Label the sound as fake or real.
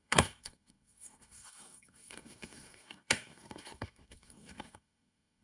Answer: fake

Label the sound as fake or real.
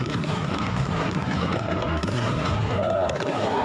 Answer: fake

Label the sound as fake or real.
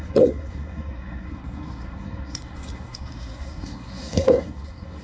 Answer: fake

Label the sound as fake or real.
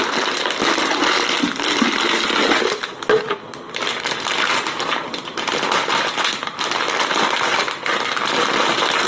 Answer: real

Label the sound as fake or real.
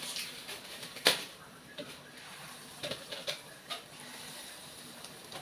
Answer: fake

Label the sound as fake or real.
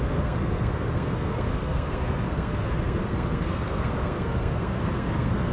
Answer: fake